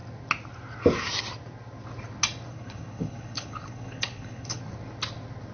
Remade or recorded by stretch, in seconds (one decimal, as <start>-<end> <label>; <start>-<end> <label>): 0.0-2.5 recorded; 2.5-4.6 remade; 4.6-5.5 recorded